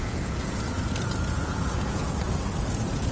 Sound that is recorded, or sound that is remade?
remade